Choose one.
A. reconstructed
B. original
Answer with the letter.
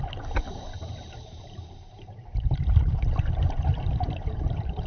A